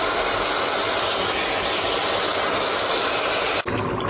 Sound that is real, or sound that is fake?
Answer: real